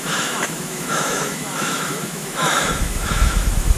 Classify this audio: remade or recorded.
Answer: remade